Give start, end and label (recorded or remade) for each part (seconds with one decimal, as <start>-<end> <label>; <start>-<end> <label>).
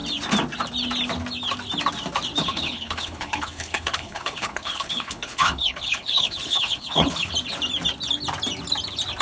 0.0-2.4 recorded; 2.4-7.3 remade; 7.3-9.2 recorded